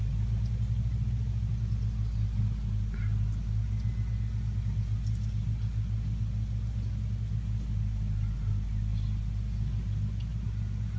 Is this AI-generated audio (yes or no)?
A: no